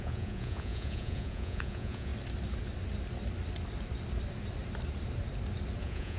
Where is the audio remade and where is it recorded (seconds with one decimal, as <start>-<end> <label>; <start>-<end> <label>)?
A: 0.0-2.1 remade; 2.1-5.8 recorded; 5.8-6.2 remade